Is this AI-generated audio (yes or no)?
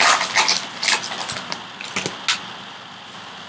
no